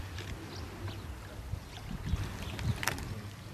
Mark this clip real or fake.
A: real